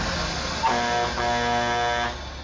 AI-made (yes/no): no